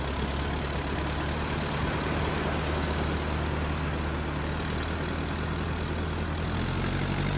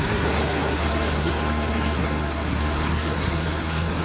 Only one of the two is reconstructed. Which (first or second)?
second